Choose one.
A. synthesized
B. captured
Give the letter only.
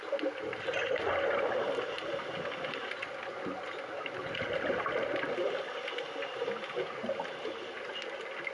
B